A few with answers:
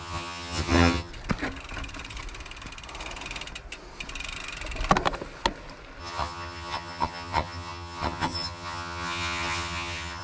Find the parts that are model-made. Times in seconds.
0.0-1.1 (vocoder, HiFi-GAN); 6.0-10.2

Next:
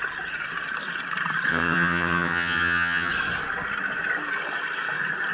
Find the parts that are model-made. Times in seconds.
1.5-3.1 (vocoder, HiFi-GAN)

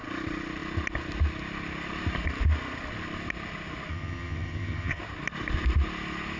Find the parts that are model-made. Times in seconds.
3.9-5.0 (vocoder, HiFi-GAN)

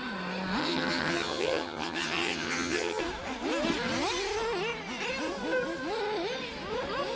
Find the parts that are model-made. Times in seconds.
0.6-3.0 (vocoder, HiFi-GAN)

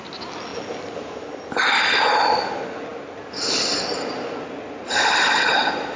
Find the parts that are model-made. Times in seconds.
none

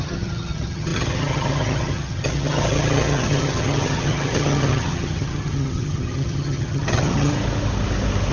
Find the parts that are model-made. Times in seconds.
0.0-7.3 (vocoder, HiFi-GAN)

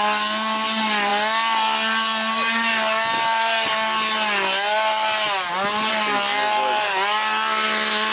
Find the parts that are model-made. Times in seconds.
none